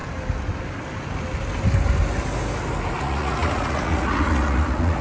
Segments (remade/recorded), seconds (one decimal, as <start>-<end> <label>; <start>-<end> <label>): 0.0-3.0 recorded; 3.0-5.0 remade

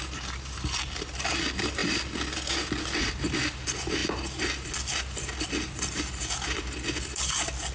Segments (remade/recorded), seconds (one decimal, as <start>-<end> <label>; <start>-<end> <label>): 0.0-7.7 recorded

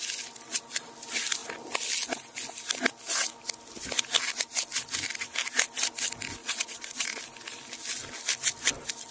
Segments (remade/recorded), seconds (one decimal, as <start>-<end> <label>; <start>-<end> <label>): 0.0-6.4 recorded; 6.4-7.2 remade; 7.2-9.1 recorded

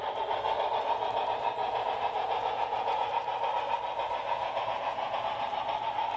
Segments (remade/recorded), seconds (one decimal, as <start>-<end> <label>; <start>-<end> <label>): 0.0-1.6 recorded; 1.6-3.1 remade; 3.1-4.2 recorded; 4.2-5.2 remade; 5.2-6.2 recorded

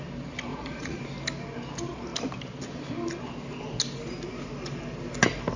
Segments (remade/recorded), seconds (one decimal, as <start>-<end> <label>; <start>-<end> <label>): 0.0-0.5 recorded; 0.5-1.0 remade; 1.0-5.6 recorded